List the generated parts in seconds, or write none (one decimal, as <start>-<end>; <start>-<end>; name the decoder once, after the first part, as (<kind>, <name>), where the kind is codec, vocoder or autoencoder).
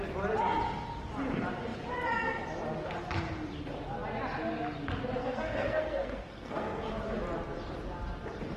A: 5.2-6.9 (codec, SNAC)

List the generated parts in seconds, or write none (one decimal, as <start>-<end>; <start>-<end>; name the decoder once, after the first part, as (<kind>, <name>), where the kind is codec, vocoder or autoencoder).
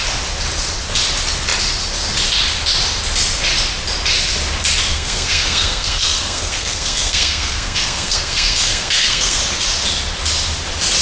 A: 4.9-9.4 (codec, SNAC)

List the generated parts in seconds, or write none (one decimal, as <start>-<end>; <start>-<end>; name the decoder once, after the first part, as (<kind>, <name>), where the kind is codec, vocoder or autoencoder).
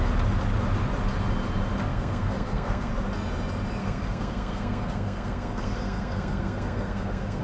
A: 1.9-2.9 (codec, SNAC); 3.8-7.4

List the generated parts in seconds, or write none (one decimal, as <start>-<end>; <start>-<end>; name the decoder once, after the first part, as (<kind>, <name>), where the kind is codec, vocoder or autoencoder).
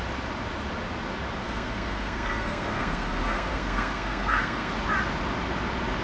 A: 1.4-4.7 (codec, SNAC)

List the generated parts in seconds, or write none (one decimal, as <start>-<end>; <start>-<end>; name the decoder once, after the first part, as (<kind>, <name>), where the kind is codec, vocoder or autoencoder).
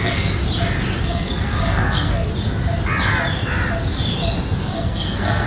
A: 0.0-0.4 (codec, SNAC); 1.0-2.3; 4.6-5.5